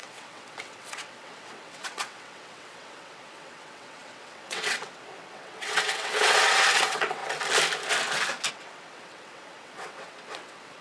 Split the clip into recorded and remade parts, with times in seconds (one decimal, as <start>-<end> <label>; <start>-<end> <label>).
0.0-7.2 remade; 7.2-8.5 recorded; 8.5-10.8 remade